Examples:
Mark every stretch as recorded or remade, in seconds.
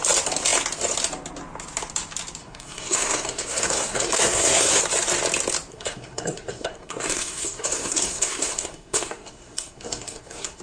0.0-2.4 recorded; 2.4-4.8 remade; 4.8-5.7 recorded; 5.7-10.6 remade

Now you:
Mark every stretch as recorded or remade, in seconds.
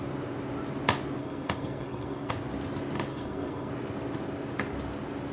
0.0-1.2 recorded; 1.2-2.3 remade; 2.3-3.1 recorded; 3.1-3.7 remade; 3.7-5.3 recorded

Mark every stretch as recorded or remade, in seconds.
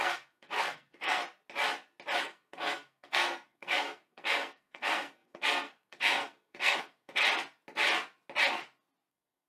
0.0-1.2 remade; 1.2-2.2 recorded; 2.2-7.2 remade; 7.2-9.1 recorded; 9.1-9.5 remade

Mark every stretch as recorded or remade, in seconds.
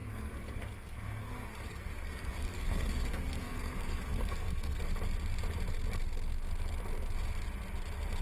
0.0-4.8 remade; 4.8-8.2 recorded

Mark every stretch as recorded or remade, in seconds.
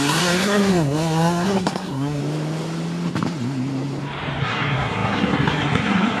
0.0-2.2 remade; 2.2-4.4 recorded; 4.4-6.2 remade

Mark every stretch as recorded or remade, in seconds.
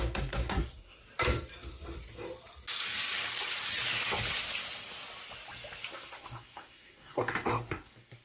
0.0-1.0 remade; 1.0-5.9 recorded; 5.9-8.2 remade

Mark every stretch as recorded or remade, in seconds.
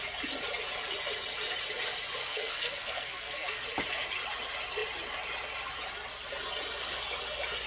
0.0-2.2 recorded; 2.2-3.6 remade; 3.6-7.7 recorded